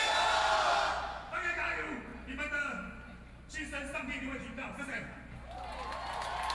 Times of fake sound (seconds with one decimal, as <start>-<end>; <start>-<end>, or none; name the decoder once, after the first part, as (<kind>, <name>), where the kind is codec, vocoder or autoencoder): none